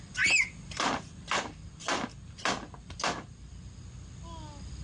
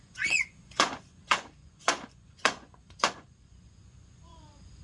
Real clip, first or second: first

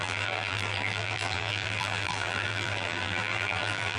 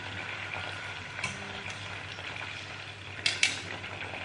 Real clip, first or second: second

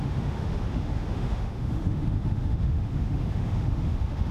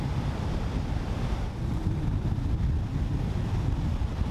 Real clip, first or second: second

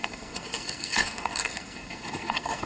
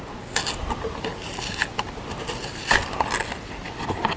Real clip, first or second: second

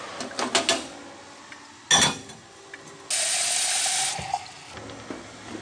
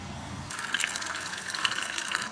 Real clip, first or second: first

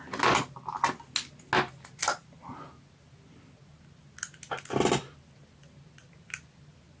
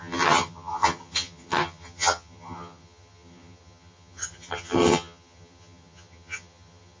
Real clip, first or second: first